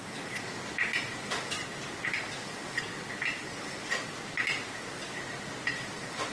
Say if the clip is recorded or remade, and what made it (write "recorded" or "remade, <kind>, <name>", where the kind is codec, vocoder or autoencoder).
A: recorded